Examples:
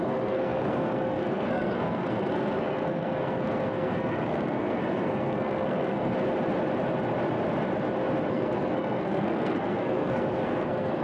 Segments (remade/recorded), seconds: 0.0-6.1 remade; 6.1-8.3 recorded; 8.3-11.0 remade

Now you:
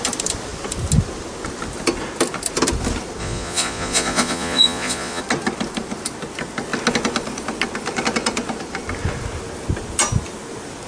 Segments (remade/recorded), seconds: 0.0-3.2 recorded; 3.2-5.2 remade; 5.2-10.9 recorded

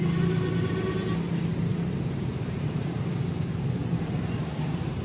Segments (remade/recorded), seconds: 0.0-1.7 recorded; 1.7-5.0 remade

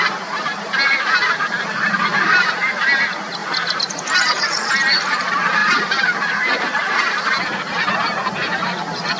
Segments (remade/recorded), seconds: 0.0-3.4 recorded; 3.4-4.7 remade; 4.7-5.6 recorded; 5.6-7.1 remade; 7.1-9.2 recorded

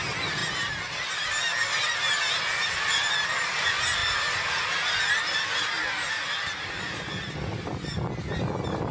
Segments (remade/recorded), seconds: 0.0-8.9 recorded

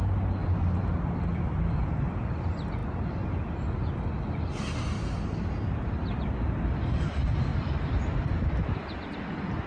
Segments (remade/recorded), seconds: 0.0-0.4 recorded; 0.4-1.7 remade; 1.7-7.5 recorded; 7.5-8.0 remade; 8.0-9.7 recorded

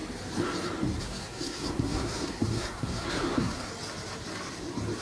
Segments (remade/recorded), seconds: 0.0-1.0 recorded; 1.0-3.7 remade; 3.7-5.0 recorded

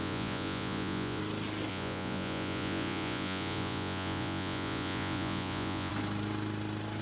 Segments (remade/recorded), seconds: 0.0-1.2 remade; 1.2-1.7 recorded; 1.7-5.9 remade; 5.9-7.0 recorded